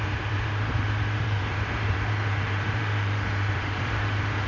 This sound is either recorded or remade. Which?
remade